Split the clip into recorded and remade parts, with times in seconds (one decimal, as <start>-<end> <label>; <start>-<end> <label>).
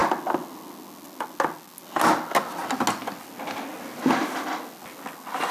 0.0-5.5 recorded